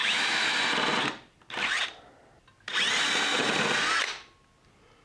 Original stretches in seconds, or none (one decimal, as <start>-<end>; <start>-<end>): 0.6-5.0